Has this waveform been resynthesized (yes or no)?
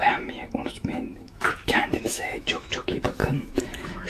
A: yes